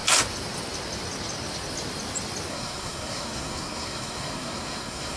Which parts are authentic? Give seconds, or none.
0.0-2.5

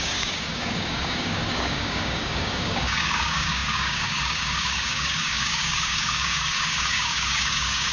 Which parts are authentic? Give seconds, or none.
none

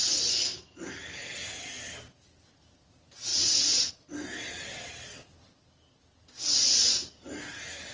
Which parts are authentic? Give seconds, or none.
0.0-3.3; 3.9-7.9

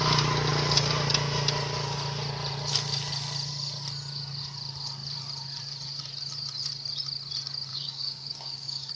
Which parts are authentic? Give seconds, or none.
0.0-7.7